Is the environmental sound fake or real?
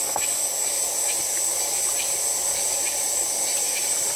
real